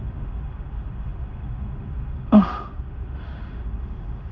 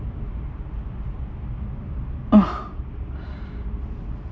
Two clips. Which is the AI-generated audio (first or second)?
first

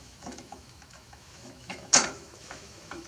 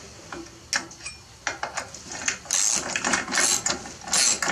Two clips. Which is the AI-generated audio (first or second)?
first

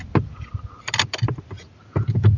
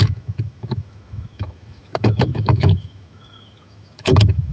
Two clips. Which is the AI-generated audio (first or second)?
second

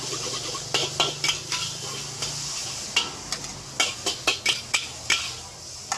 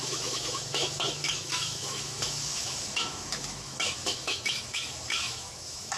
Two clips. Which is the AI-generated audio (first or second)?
second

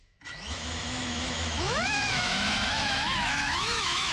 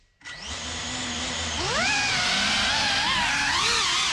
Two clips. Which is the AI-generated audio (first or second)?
first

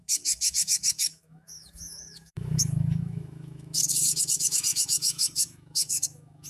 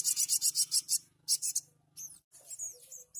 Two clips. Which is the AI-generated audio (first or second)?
first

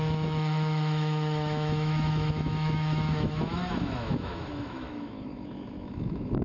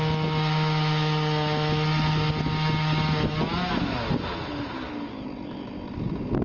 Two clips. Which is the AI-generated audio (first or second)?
first